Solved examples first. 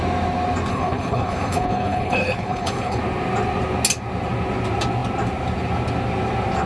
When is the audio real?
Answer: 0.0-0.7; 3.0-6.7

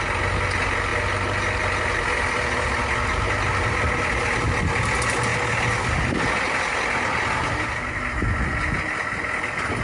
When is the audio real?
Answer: 0.0-9.8

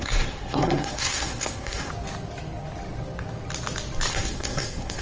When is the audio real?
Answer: 1.9-4.1

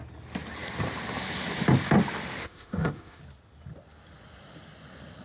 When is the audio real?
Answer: 0.0-2.4; 3.2-5.2

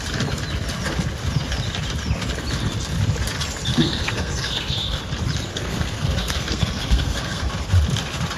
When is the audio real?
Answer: 0.0-3.7; 5.0-5.5; 7.5-8.4